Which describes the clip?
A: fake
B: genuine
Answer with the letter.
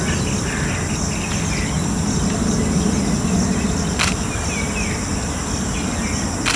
B